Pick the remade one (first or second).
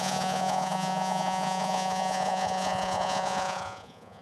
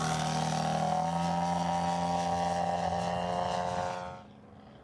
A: first